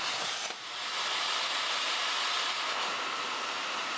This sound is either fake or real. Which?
real